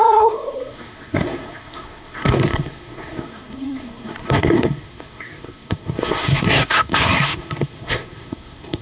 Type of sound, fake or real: fake